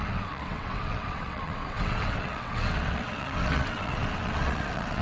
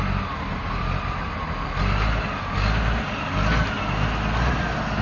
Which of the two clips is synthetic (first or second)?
first